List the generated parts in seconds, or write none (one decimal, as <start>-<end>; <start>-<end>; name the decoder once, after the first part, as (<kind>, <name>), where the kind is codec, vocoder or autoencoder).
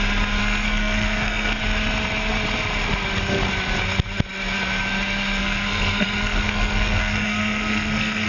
0.4-1.6 (codec, SNAC); 5.4-8.3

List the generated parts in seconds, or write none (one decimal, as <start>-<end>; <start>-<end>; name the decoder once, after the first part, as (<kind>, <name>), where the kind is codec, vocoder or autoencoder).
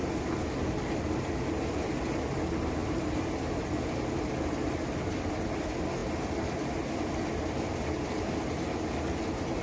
none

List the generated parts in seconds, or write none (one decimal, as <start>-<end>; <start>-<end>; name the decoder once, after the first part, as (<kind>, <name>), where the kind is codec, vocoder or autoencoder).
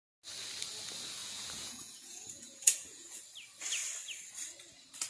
1.2-3.2 (vocoder, Vocos)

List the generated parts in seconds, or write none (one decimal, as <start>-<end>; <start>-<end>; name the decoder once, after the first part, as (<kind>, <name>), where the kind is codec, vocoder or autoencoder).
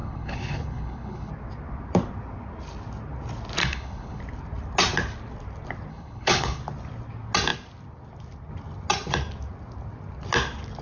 0.0-1.3 (codec, HILCodec); 3.6-4.2; 5.9-6.6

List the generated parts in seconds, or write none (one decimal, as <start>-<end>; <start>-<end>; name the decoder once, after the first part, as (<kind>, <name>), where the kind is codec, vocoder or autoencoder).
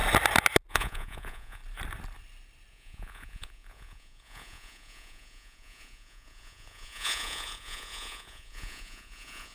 0.7-1.6 (vocoder, Vocos); 2.7-9.5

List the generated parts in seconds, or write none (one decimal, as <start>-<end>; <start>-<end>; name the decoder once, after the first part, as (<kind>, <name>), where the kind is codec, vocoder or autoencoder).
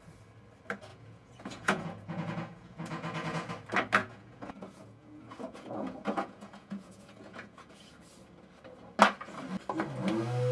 0.9-3.5 (vocoder, Vocos); 4.0-7.9